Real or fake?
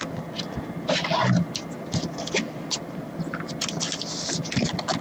real